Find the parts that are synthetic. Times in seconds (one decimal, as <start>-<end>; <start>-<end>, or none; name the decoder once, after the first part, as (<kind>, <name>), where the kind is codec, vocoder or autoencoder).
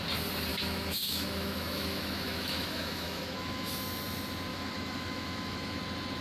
0.5-3.7 (autoencoder, DAC-VAE); 4.5-5.8